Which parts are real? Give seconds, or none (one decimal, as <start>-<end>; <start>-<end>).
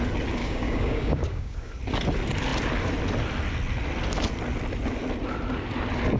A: 0.0-0.4; 1.7-6.2